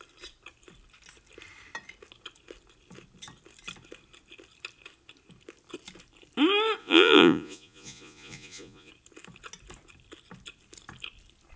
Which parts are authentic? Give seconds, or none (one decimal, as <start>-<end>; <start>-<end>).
0.0-6.8; 8.9-11.6